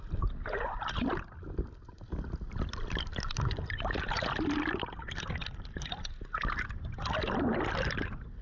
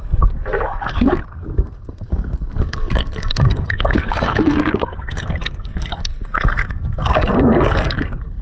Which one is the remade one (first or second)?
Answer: second